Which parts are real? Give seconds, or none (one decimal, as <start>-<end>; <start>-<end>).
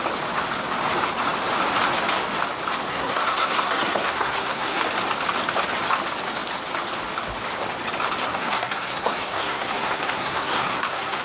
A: 0.0-2.9; 4.8-8.2